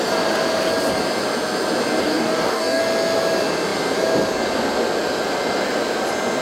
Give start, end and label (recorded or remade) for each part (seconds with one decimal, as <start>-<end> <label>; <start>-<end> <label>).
0.0-2.0 recorded; 2.0-2.8 remade; 2.8-6.4 recorded

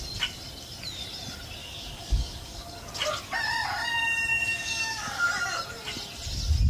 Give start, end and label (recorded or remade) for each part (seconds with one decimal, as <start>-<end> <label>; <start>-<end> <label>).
0.0-1.6 recorded; 1.6-2.9 remade; 2.9-4.3 recorded; 4.3-5.3 remade; 5.3-6.7 recorded

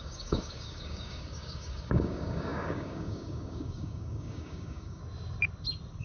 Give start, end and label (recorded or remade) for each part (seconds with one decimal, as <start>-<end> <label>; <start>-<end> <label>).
0.0-5.0 remade; 5.0-6.0 recorded

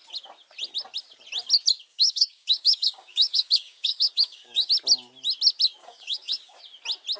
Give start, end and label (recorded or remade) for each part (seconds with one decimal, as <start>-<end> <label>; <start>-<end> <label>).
0.0-1.9 recorded; 1.9-4.7 remade; 4.7-5.8 recorded; 5.8-6.6 remade; 6.6-7.2 recorded

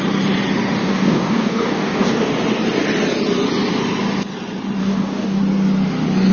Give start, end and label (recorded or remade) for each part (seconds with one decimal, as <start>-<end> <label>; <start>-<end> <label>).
0.0-0.8 recorded; 0.8-2.3 remade; 2.3-4.8 recorded; 4.8-5.4 remade; 5.4-6.3 recorded

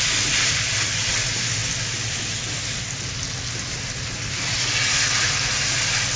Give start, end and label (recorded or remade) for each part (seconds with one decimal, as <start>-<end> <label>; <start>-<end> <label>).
0.0-6.2 recorded

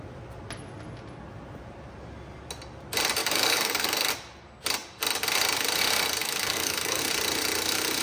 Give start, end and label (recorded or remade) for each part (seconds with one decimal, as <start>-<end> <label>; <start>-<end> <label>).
0.0-3.2 recorded; 3.2-4.1 remade; 4.1-6.2 recorded; 6.2-7.0 remade; 7.0-8.0 recorded

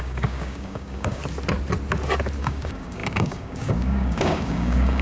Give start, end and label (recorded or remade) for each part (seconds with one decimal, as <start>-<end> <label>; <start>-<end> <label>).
0.0-1.2 remade; 1.2-2.4 recorded; 2.4-5.0 remade